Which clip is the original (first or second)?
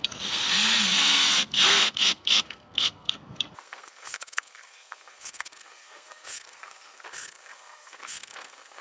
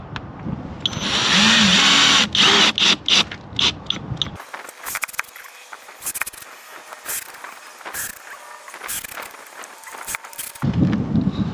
second